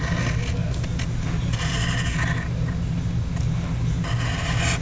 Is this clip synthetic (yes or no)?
no